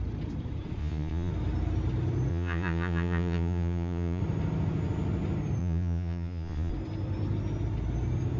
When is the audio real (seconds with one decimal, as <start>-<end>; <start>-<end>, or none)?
0.0-0.8; 1.3-2.3; 4.2-5.6; 6.7-8.4